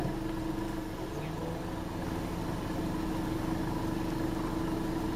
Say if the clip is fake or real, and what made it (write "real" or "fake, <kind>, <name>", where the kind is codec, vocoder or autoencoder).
real